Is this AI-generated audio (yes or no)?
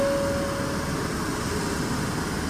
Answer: no